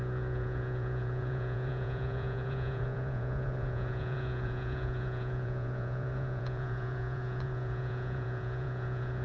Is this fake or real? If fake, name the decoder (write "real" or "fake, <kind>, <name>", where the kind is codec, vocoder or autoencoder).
fake, vocoder, Vocos